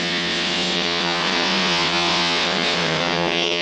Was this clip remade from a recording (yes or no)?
yes